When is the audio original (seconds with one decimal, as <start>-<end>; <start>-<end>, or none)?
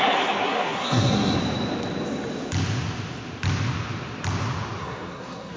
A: 1.4-4.8